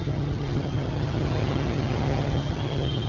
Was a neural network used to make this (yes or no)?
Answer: yes